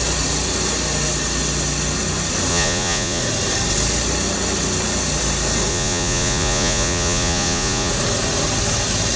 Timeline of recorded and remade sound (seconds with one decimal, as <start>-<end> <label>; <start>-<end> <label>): 0.0-2.5 recorded; 2.5-3.2 remade; 3.2-5.7 recorded; 5.7-7.9 remade; 7.9-9.2 recorded